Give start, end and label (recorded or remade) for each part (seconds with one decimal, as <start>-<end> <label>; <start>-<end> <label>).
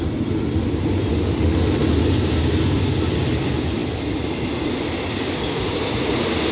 0.0-1.1 recorded; 1.1-1.6 remade; 1.6-6.5 recorded